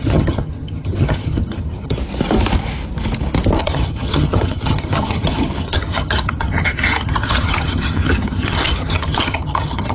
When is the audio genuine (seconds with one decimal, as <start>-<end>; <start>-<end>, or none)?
2.0-3.6